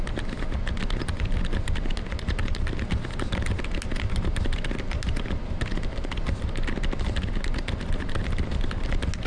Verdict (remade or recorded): recorded